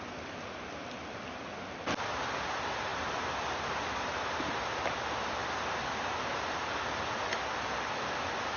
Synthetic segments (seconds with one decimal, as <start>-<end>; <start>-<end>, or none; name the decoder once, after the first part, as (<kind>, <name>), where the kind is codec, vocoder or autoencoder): none